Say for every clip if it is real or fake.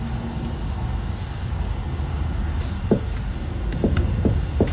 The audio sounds real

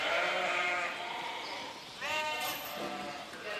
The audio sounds fake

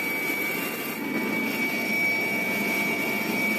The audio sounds real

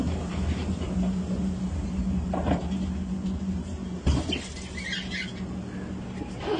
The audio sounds real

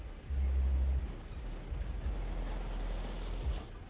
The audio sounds real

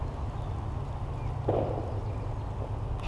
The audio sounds real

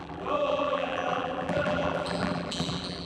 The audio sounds fake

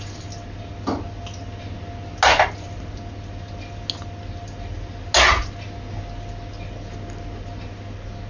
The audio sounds real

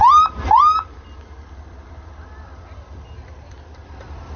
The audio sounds fake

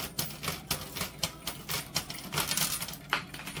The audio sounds real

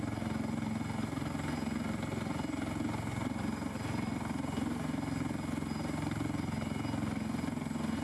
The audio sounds real